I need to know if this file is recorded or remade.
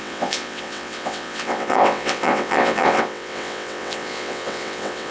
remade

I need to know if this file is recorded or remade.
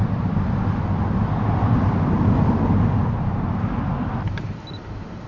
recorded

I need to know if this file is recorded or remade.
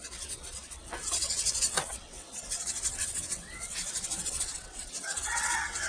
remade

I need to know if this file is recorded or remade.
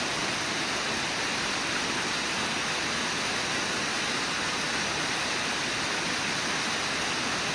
recorded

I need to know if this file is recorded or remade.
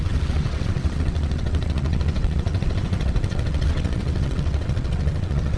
remade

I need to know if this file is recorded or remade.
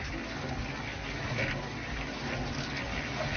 recorded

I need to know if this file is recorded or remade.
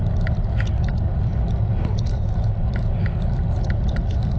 recorded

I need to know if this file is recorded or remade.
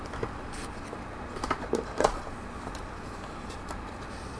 recorded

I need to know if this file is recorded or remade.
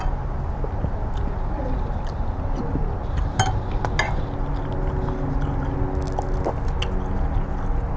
recorded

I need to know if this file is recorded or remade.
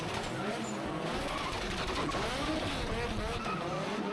recorded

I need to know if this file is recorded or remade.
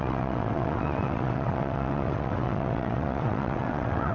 remade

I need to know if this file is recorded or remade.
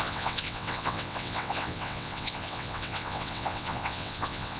remade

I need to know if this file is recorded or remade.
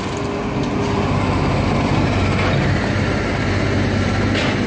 recorded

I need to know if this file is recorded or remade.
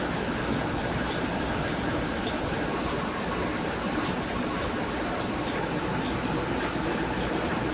recorded